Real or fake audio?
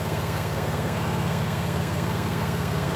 fake